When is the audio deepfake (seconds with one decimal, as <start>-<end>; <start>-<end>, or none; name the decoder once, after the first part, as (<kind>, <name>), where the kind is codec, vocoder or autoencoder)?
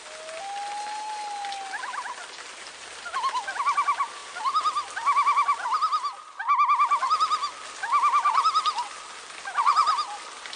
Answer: none